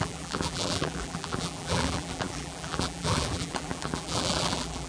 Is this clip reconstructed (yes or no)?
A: yes